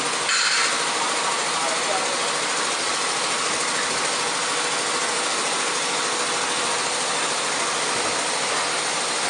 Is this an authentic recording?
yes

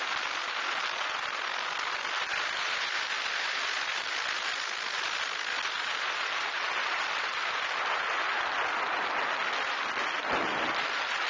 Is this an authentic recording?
yes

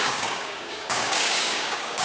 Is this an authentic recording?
no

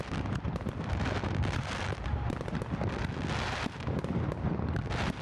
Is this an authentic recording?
no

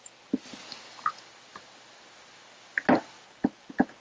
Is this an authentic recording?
yes